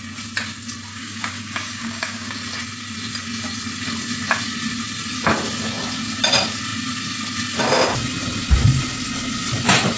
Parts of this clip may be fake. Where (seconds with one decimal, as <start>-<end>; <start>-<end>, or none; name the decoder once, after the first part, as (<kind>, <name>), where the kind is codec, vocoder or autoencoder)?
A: 0.9-2.4 (codec, DAC)